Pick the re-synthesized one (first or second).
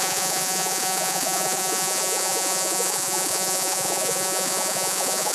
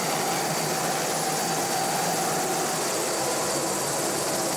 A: first